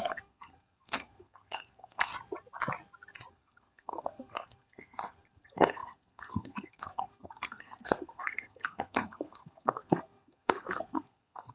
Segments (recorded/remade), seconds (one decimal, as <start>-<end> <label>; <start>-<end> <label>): 0.0-2.1 remade; 2.1-3.3 recorded; 3.3-11.5 remade